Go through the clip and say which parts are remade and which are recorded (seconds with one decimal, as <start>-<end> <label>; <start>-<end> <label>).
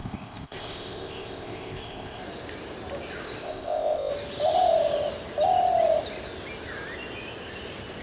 0.0-2.2 remade; 2.2-3.4 recorded; 3.4-4.1 remade; 4.1-8.0 recorded